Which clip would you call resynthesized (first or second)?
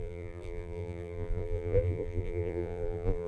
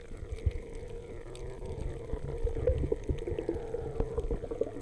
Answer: first